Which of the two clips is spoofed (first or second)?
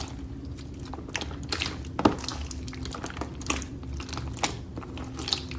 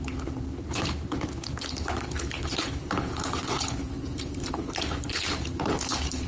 second